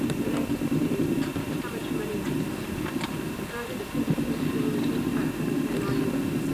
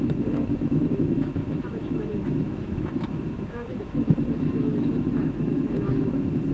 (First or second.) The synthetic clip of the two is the second